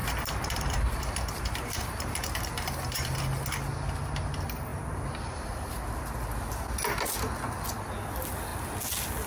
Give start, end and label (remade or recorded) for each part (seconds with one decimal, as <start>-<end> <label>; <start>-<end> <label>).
0.0-3.2 remade; 3.2-4.7 recorded; 4.7-5.7 remade; 5.7-9.3 recorded